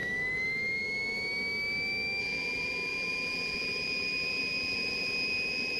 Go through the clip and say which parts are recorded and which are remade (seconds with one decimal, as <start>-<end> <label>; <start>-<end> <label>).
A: 0.0-2.2 recorded; 2.2-5.8 remade